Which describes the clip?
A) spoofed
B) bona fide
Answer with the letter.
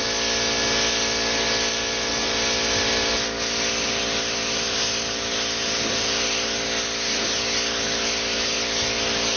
B